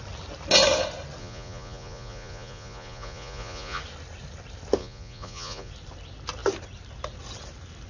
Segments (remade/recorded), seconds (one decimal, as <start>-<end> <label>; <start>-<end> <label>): 0.0-1.2 recorded; 1.2-3.8 remade; 3.8-4.8 recorded; 4.8-5.7 remade; 5.7-7.9 recorded

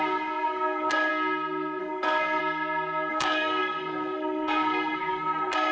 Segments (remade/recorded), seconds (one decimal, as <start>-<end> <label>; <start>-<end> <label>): 0.0-1.1 remade; 1.1-1.8 recorded; 1.8-2.4 remade; 2.4-3.1 recorded; 3.1-5.7 remade